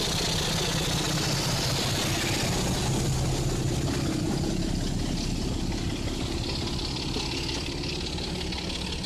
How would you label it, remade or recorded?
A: recorded